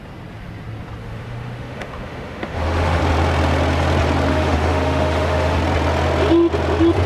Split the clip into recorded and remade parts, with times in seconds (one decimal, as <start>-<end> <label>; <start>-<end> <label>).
0.0-1.0 recorded; 1.0-3.0 remade; 3.0-4.3 recorded; 4.3-5.6 remade; 5.6-7.1 recorded